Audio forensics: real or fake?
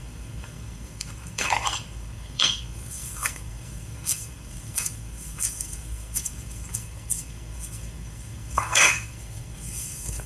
fake